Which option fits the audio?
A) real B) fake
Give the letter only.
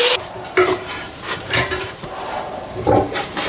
B